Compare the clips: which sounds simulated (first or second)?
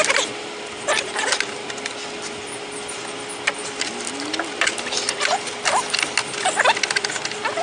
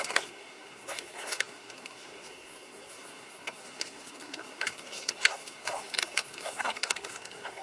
second